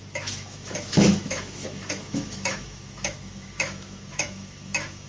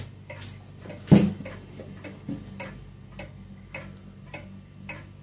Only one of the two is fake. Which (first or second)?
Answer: first